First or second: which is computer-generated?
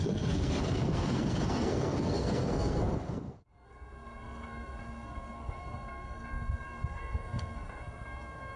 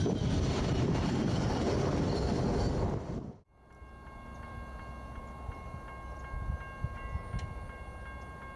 first